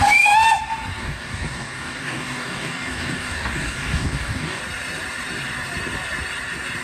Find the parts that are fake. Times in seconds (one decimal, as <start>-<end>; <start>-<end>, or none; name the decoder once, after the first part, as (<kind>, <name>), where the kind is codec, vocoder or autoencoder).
1.0-4.6 (codec, DAC)